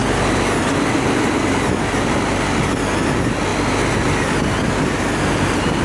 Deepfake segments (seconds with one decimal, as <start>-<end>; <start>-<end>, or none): none